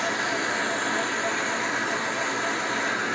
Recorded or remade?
recorded